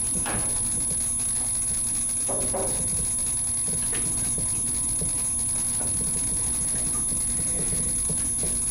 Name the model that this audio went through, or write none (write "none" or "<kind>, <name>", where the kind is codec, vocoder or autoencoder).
none